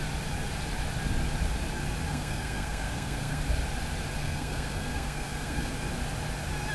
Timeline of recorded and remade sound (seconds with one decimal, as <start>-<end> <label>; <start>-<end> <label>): 0.0-2.1 recorded; 2.1-3.4 remade; 3.4-4.2 recorded; 4.2-5.7 remade; 5.7-6.7 recorded